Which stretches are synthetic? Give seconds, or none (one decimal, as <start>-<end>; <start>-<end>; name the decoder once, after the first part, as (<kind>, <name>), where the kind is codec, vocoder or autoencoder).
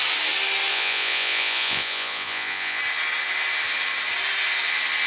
0.7-2.8 (vocoder, Vocos)